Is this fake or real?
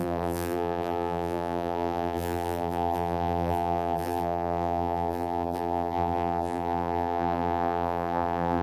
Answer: fake